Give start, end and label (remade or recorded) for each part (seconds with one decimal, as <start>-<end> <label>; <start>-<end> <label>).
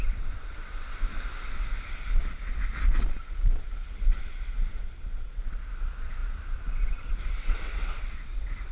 0.0-1.1 remade; 1.1-4.9 recorded; 4.9-8.7 remade